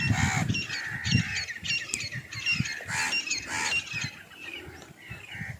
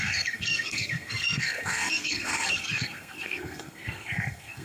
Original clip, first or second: first